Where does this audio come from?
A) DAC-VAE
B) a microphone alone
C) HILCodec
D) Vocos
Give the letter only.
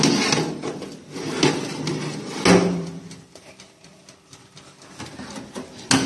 B